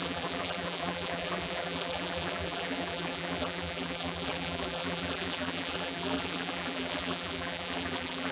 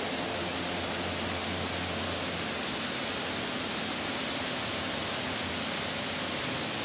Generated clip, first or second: first